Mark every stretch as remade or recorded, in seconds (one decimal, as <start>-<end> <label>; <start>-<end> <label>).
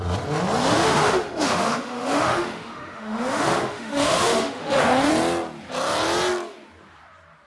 0.0-0.6 recorded; 0.6-5.1 remade; 5.1-7.5 recorded